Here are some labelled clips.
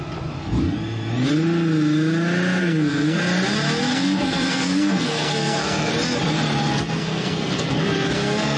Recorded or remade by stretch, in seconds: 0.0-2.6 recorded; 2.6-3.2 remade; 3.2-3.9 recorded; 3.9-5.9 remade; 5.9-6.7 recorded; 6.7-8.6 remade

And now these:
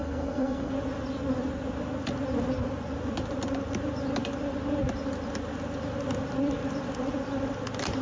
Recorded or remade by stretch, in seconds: 0.0-0.7 remade; 0.7-8.0 recorded

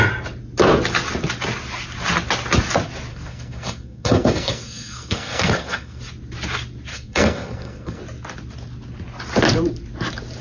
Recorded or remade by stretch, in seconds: 0.0-3.1 recorded; 3.1-6.0 remade; 6.0-6.9 recorded; 6.9-8.0 remade; 8.0-10.4 recorded

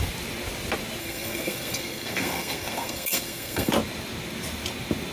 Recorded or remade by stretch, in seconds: 0.0-1.0 recorded; 1.0-3.7 remade; 3.7-5.1 recorded

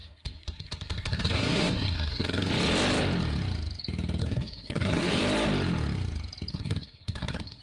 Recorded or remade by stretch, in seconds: 0.0-2.5 remade; 2.5-4.2 recorded; 4.2-5.2 remade; 5.2-6.5 recorded; 6.5-7.6 remade